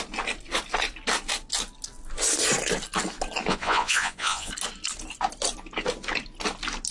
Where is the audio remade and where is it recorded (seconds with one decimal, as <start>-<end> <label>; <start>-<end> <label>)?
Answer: 0.0-3.5 recorded; 3.5-4.5 remade; 4.5-6.9 recorded